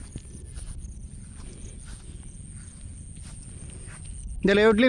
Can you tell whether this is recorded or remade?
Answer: recorded